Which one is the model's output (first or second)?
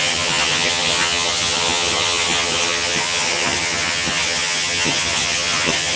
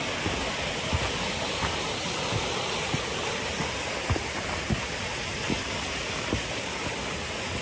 first